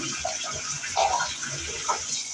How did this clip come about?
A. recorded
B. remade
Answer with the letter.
B